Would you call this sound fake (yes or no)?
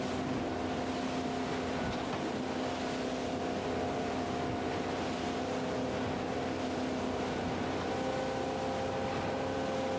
no